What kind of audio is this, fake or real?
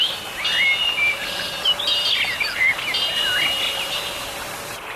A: real